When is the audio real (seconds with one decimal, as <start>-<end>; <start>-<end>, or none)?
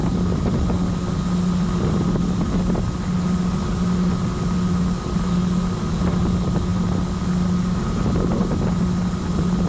0.0-9.7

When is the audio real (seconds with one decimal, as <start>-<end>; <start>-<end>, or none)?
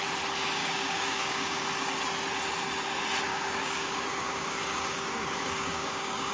0.0-0.6; 1.6-3.3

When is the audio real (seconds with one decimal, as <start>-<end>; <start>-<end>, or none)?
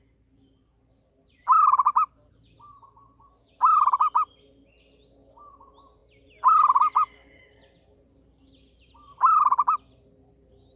0.0-10.8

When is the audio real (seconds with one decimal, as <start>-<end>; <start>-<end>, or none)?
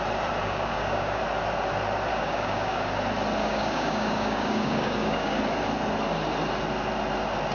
0.0-0.4; 1.2-2.1; 2.9-3.4; 5.4-7.5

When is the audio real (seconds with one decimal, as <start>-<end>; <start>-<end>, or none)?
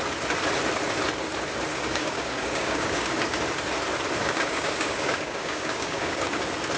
0.0-1.7; 3.4-4.2; 6.3-6.8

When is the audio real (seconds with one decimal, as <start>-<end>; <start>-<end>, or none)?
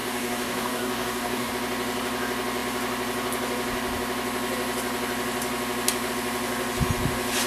1.5-7.5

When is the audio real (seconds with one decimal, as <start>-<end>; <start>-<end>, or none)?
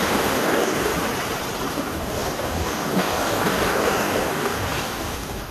0.9-1.7